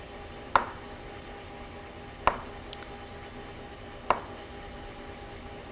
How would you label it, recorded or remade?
recorded